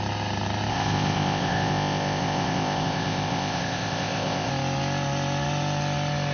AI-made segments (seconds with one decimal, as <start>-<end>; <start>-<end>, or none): 0.7-4.5

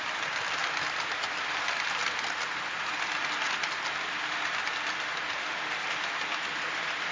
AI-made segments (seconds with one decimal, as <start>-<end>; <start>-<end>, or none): none

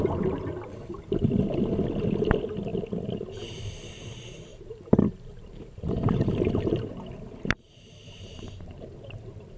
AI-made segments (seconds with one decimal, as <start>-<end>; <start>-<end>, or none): 4.5-9.1

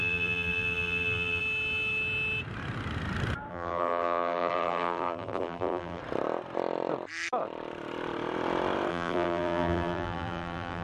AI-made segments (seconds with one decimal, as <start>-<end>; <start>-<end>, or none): 0.0-1.4; 3.5-6.0; 8.9-10.8

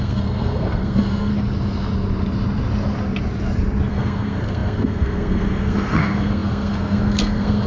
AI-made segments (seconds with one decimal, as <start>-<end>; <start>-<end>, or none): 0.0-1.3; 3.9-7.7

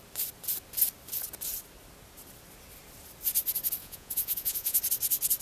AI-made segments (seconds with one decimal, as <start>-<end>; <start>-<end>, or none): 3.8-4.8

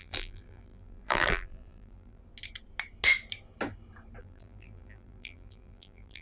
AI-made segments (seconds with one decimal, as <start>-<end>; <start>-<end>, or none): 0.0-2.2; 4.2-6.2